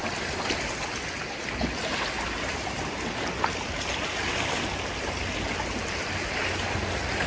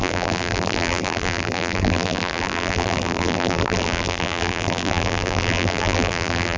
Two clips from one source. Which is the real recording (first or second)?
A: first